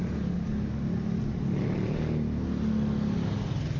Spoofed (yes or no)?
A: no